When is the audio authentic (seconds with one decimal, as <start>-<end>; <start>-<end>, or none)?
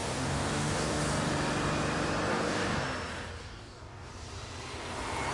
1.0-2.3; 2.8-3.4; 4.1-5.3